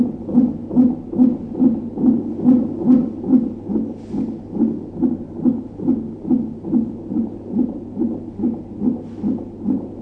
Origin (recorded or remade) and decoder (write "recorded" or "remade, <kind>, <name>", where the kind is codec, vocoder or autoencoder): recorded